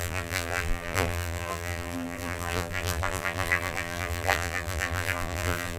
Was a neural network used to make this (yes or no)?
yes